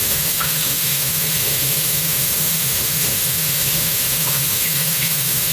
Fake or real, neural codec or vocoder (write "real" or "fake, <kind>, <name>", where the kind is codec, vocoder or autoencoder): fake, autoencoder, DAC-VAE